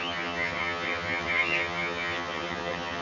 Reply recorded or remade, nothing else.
remade